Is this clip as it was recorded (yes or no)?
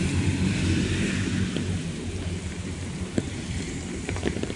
no